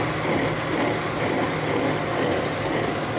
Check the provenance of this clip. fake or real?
real